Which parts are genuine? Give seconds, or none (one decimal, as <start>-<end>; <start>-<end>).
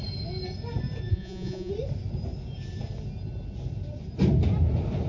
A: 0.0-1.1; 1.7-5.1